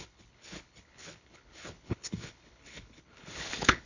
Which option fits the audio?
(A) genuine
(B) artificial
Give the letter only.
B